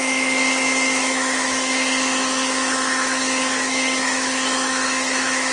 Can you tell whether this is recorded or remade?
remade